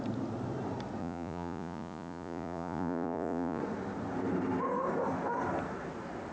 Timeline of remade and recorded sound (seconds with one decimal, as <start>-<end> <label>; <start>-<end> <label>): 0.0-1.0 recorded; 1.0-3.6 remade; 3.6-6.3 recorded